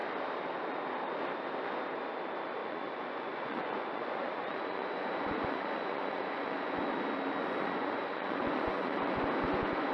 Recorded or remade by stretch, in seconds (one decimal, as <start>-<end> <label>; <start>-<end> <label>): 0.0-2.6 recorded; 2.6-6.9 remade; 6.9-7.4 recorded; 7.4-9.2 remade; 9.2-9.9 recorded